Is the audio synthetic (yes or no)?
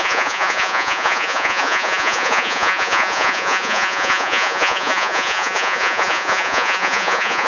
yes